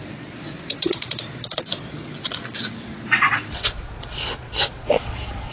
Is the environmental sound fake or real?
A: fake